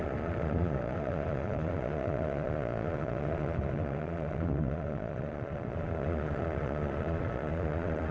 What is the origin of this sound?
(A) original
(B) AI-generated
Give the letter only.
B